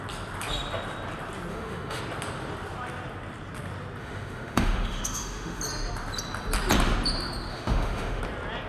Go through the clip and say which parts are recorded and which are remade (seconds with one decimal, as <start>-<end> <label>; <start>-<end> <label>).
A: 0.0-1.5 recorded; 1.5-2.0 remade; 2.0-4.0 recorded; 4.0-5.6 remade; 5.6-7.5 recorded; 7.5-8.2 remade; 8.2-8.7 recorded